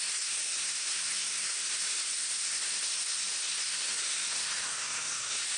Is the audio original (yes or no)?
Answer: no